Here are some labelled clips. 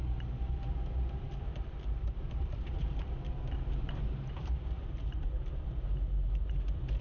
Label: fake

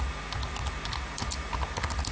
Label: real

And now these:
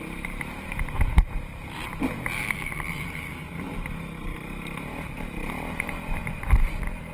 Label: fake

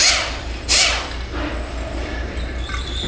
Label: real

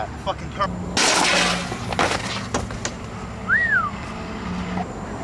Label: real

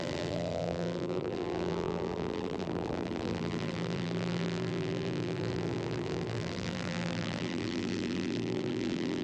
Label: fake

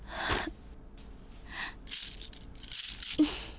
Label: real